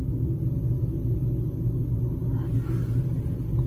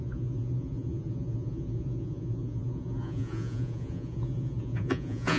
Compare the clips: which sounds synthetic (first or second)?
second